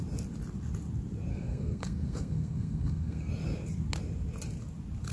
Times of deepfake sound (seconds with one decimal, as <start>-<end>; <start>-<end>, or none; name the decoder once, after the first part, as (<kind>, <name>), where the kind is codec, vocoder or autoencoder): 1.3-3.3 (codec, SNAC)